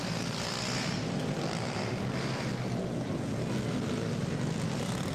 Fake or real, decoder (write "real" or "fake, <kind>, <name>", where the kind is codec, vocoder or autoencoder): real